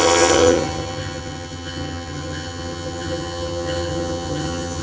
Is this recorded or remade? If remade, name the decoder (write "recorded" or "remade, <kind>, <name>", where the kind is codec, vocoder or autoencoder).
remade, vocoder, HiFi-GAN